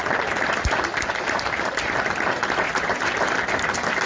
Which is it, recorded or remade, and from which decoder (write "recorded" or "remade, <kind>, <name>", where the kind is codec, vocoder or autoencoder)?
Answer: recorded